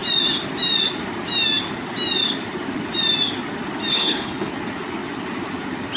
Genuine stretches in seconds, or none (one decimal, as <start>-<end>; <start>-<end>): 0.0-3.9; 4.5-6.0